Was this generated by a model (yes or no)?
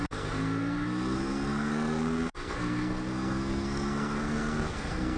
yes